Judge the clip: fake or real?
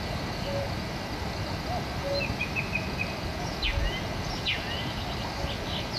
real